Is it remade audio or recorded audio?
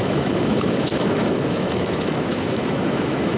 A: remade